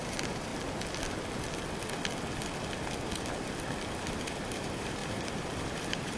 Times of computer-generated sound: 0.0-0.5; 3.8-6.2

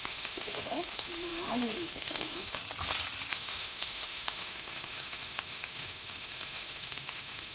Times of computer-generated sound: 0.0-2.6; 3.3-7.5

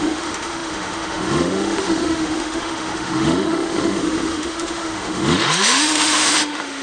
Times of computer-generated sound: 0.0-6.8